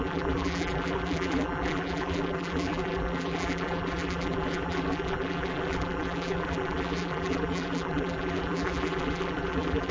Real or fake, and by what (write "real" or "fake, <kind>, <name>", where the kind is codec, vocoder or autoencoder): fake, vocoder, BigVGAN v2